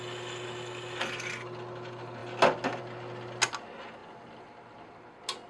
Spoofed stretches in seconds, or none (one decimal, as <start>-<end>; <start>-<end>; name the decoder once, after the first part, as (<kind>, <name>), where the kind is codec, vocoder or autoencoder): none